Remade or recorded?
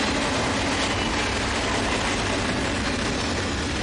recorded